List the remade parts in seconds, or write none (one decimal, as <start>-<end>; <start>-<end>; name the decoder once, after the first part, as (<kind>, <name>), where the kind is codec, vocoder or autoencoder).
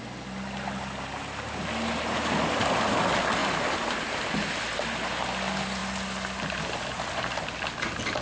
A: 3.4-4.3 (vocoder, BigVGAN v2)